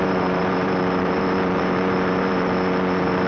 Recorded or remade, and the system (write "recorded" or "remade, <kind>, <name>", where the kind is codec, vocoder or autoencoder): remade, vocoder, BigVGAN v2